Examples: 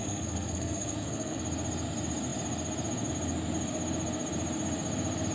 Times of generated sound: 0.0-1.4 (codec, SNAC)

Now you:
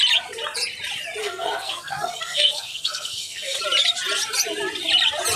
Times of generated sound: 1.2-3.6 (codec, SNAC)

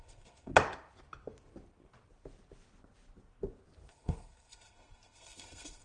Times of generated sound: 0.0-0.5 (codec, SNAC); 3.9-5.8

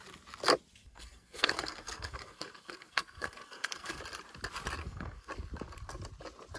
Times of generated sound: 0.8-4.0 (codec, SNAC); 4.8-5.3

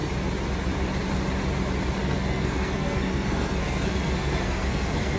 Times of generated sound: 2.0-5.2 (codec, SNAC)

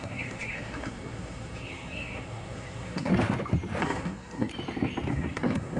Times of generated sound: 0.0-3.1 (codec, SNAC); 3.8-4.5; 5.1-5.8

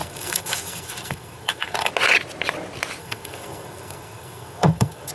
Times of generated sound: 0.0-1.9 (codec, SNAC); 3.0-5.1

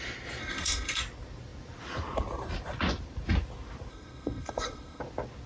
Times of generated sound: 0.4-1.0 (codec, SNAC); 3.9-5.0